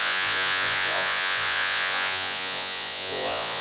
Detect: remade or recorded remade